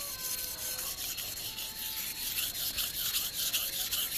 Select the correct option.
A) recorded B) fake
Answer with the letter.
A